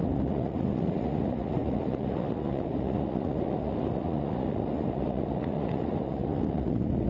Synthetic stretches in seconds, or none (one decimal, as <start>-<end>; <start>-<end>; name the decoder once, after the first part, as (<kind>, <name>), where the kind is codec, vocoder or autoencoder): 0.0-7.1 (vocoder, Vocos)